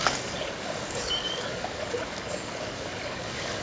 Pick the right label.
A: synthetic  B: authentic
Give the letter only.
A